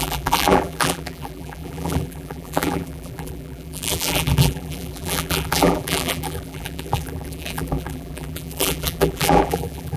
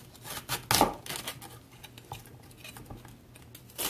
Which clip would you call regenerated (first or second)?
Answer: first